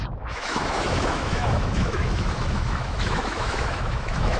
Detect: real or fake fake